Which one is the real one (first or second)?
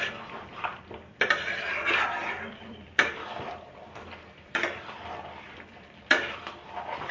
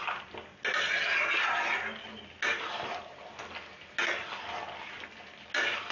second